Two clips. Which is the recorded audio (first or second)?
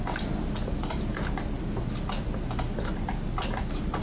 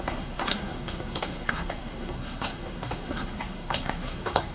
first